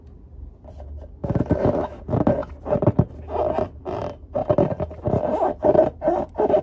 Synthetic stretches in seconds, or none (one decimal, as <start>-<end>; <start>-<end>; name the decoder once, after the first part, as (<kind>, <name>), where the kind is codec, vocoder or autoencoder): 1.2-2.0 (autoencoder, DAC-VAE)

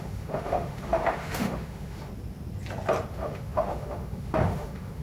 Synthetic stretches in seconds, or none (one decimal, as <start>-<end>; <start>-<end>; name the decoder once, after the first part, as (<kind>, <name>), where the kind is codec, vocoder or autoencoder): 0.0-2.1 (autoencoder, DAC-VAE); 3.1-5.0

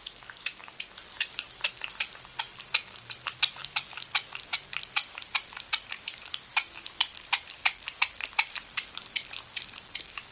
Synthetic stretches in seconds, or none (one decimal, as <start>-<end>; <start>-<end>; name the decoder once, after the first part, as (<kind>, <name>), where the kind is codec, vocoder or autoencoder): none

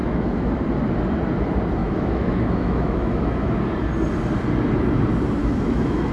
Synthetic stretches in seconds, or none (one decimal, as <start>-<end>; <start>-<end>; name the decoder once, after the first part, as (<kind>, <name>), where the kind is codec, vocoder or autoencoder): 0.0-0.6 (autoencoder, DAC-VAE); 1.8-3.5; 5.4-6.1